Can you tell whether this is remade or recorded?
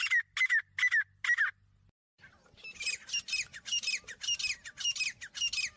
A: recorded